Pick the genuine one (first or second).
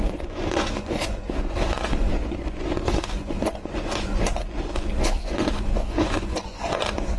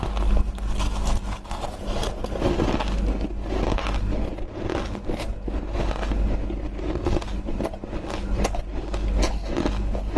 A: second